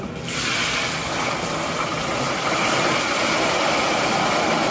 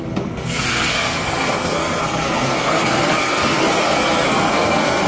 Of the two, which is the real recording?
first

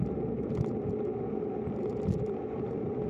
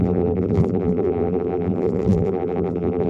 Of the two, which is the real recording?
first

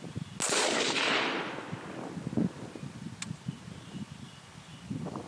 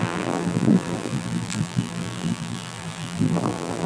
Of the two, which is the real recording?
first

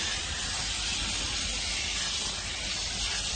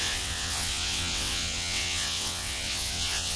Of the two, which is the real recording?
first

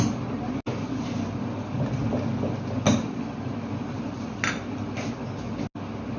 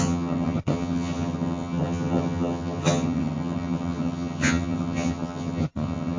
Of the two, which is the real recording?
first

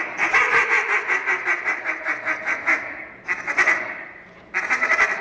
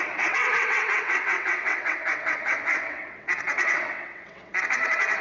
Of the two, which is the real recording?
first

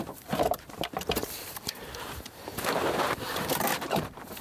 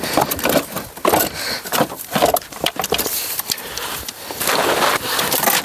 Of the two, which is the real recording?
second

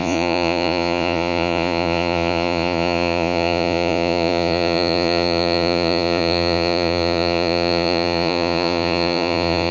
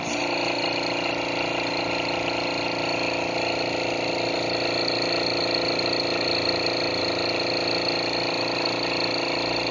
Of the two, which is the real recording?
second